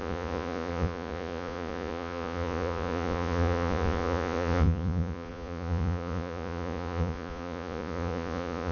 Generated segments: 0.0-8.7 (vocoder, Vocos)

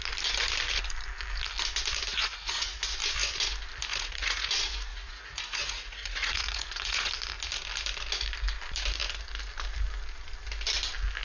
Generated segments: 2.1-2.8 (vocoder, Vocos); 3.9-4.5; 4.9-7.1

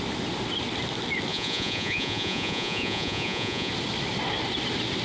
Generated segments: 1.3-3.7 (vocoder, Vocos)

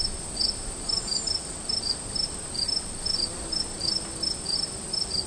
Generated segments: none

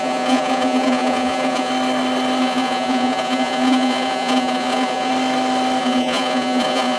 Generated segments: 0.0-1.7 (vocoder, Vocos); 2.4-5.1; 5.8-7.0

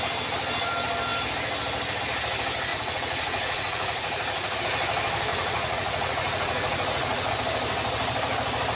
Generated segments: 2.7-4.6 (vocoder, Vocos); 5.3-7.3

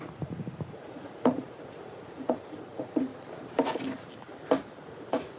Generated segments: 0.0-3.1 (vocoder, Vocos); 4.8-5.4

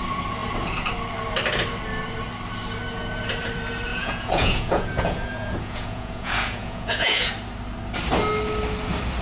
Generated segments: 3.9-7.3 (vocoder, Vocos)